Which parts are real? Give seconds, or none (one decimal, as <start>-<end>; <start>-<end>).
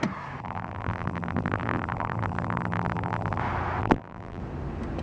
0.0-0.4; 3.4-3.8; 4.4-5.0